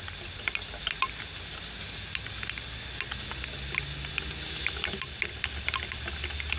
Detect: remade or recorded recorded